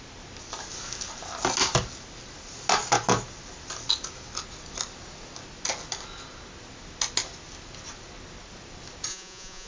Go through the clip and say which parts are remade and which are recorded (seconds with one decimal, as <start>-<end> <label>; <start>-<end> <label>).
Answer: 0.0-9.1 recorded; 9.1-9.7 remade